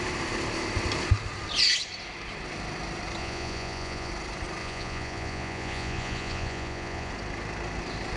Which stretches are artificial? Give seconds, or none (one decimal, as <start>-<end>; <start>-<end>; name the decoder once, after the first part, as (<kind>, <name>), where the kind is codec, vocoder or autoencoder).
3.2-4.1 (vocoder, Vocos); 4.6-7.1